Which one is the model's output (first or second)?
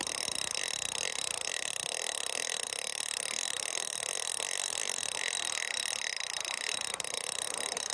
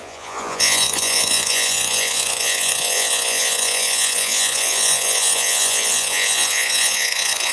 second